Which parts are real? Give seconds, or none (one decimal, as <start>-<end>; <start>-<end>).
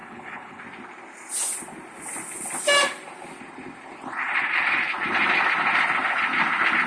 0.6-6.9